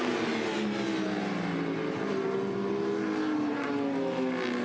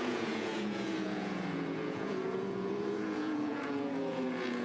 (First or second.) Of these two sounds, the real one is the first